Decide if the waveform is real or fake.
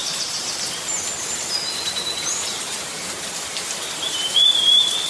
fake